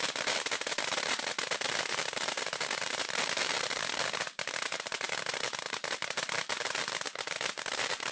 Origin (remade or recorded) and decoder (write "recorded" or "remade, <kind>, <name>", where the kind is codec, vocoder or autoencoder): remade, vocoder, BigVGAN v2